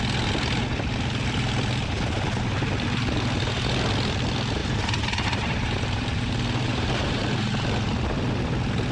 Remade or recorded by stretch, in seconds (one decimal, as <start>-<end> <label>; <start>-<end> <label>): 0.0-4.6 recorded; 4.6-6.3 remade; 6.3-6.7 recorded; 6.7-7.2 remade; 7.2-8.9 recorded